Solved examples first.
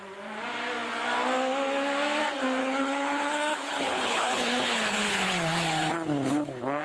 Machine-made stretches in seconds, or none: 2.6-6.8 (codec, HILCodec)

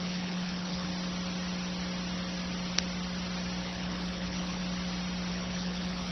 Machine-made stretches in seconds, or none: 0.0-0.9 (codec, HILCodec); 3.6-4.6; 5.3-6.1

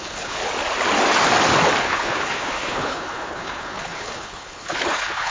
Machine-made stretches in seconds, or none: 0.0-0.4 (codec, HILCodec); 1.8-5.3

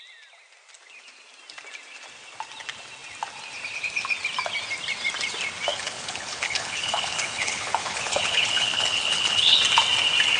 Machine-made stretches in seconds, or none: 5.7-9.6 (codec, HILCodec)

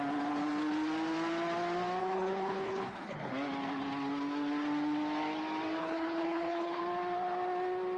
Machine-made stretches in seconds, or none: 2.0-3.3 (codec, HILCodec); 5.8-6.8